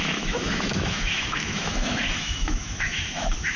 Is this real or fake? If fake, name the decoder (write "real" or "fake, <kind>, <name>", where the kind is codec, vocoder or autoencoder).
fake, autoencoder, DAC-VAE